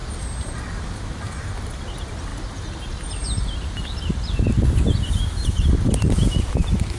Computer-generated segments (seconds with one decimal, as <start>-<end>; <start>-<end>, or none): 1.2-2.3; 5.1-7.0